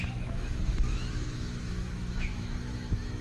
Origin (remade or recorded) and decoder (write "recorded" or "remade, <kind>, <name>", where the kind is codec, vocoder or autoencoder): remade, autoencoder, DAC-VAE